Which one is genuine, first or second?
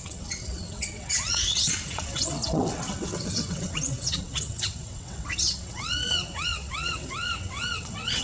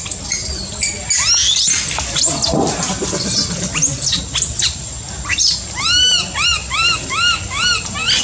second